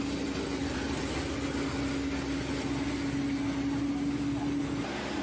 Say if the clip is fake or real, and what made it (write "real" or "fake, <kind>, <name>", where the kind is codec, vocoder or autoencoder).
real